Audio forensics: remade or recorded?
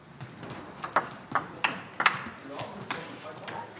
recorded